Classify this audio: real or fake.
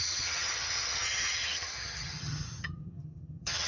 fake